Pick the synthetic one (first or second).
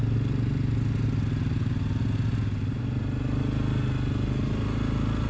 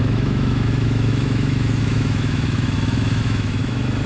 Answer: second